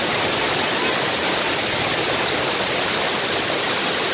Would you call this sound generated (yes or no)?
no